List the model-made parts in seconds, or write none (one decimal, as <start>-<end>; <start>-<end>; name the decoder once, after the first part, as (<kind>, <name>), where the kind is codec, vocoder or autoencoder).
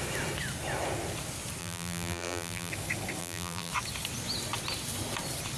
1.6-2.7 (vocoder, BigVGAN v2); 3.2-3.7